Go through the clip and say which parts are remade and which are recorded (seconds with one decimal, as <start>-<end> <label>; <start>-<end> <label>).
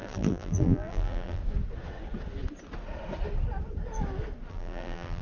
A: 0.0-1.4 remade; 1.4-4.5 recorded; 4.5-5.2 remade